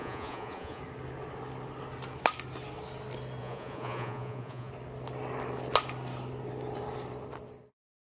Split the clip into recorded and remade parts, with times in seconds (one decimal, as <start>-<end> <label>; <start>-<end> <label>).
0.0-0.8 remade; 0.8-3.4 recorded; 3.4-4.7 remade; 4.7-8.0 recorded